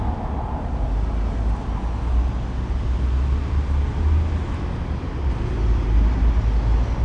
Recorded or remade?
recorded